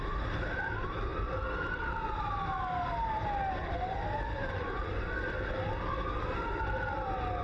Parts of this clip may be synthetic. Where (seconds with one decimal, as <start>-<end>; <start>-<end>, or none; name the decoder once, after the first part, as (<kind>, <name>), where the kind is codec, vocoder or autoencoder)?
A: 4.4-4.9 (vocoder, Vocos)